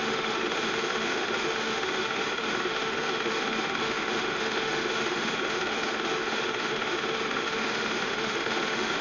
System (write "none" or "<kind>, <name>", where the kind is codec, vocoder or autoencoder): autoencoder, DAC-VAE